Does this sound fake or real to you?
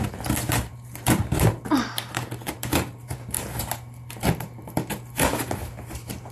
fake